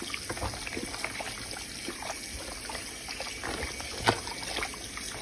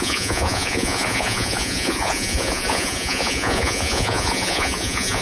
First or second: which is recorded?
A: first